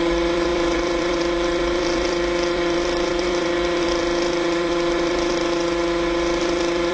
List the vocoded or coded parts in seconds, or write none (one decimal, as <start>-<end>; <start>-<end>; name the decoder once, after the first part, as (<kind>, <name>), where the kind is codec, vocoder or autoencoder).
0.0-5.4 (vocoder, BigVGAN v2); 6.4-6.9